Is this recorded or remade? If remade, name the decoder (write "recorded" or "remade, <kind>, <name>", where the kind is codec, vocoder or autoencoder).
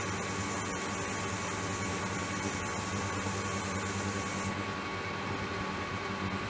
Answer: recorded